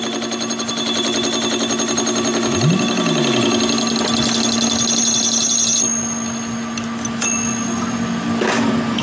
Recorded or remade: recorded